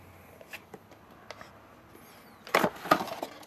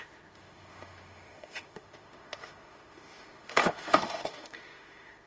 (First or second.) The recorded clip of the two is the first